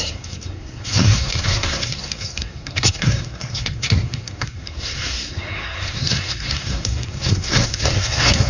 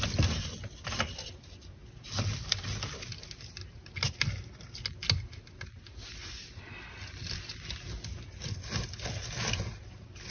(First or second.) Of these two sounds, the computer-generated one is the first